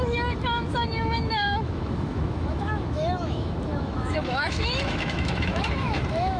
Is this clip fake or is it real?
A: fake